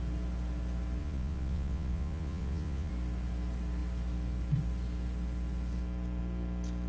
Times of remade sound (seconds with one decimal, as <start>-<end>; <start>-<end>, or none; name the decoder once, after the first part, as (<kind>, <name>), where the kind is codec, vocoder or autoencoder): 1.0-2.9 (vocoder, Vocos)